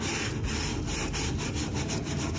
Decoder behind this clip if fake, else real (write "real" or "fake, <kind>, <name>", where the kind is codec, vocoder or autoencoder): real